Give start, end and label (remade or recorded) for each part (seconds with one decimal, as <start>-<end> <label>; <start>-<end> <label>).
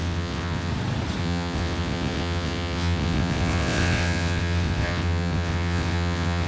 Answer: 0.0-0.7 remade; 0.7-1.2 recorded; 1.2-6.5 remade